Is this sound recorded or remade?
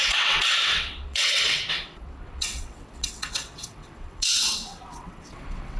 remade